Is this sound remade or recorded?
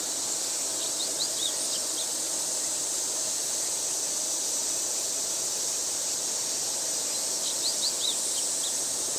recorded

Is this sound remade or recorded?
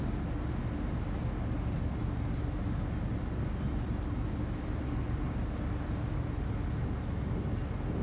recorded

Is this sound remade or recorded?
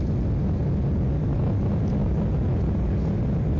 recorded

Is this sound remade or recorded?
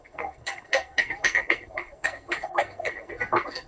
remade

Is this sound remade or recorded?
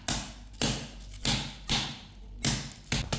recorded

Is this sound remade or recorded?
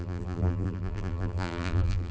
remade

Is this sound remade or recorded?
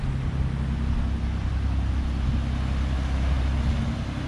recorded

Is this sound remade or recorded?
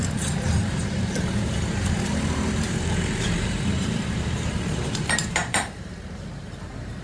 remade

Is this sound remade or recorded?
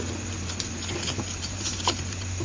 recorded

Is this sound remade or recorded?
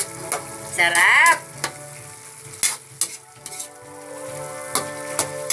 recorded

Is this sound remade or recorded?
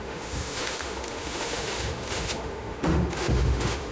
remade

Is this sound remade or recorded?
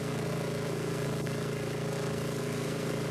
remade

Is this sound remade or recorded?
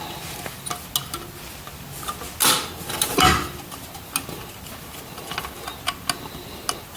recorded